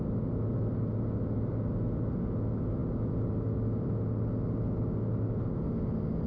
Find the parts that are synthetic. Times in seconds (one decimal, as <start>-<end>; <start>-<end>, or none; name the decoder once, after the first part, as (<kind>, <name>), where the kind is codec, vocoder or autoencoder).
none